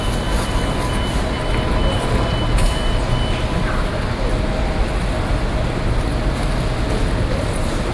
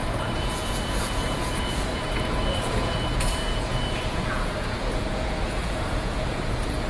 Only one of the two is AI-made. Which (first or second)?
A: second